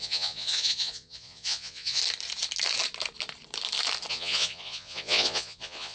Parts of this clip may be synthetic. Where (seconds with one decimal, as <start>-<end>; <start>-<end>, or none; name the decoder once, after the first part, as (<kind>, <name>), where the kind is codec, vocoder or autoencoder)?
0.0-2.0 (vocoder, Vocos); 4.1-5.9